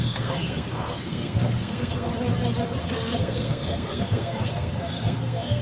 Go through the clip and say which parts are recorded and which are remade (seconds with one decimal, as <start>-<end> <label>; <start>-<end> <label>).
0.0-2.1 remade; 2.1-2.8 recorded; 2.8-5.6 remade